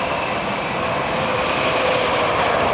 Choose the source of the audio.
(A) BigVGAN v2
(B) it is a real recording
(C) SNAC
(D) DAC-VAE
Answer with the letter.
B